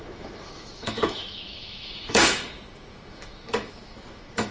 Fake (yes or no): yes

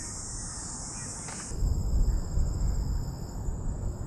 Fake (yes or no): no